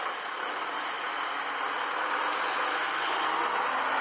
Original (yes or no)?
yes